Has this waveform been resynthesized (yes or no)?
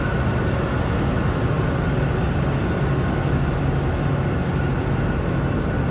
no